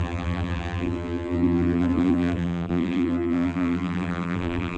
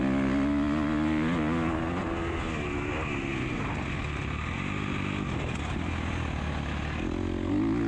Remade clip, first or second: first